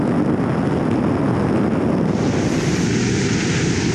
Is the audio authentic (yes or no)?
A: yes